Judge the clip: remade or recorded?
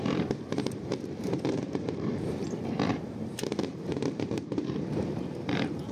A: remade